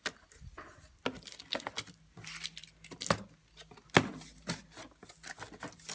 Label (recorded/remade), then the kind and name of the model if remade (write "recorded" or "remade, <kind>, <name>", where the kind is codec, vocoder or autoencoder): recorded